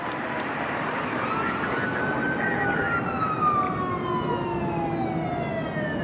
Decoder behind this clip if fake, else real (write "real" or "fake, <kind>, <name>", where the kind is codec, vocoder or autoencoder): real